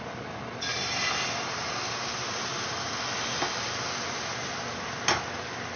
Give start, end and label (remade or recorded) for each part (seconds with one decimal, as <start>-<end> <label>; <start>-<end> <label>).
0.0-5.8 recorded